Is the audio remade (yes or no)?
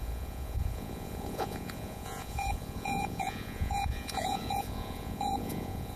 yes